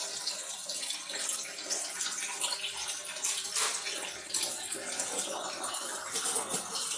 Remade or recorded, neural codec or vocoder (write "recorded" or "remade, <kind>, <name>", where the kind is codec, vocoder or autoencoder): recorded